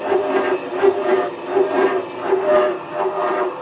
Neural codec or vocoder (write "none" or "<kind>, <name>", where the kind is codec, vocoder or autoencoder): none